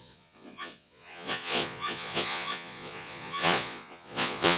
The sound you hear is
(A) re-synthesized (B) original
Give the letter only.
A